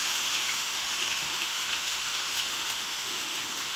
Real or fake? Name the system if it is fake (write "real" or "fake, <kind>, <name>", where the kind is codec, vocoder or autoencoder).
fake, autoencoder, DAC-VAE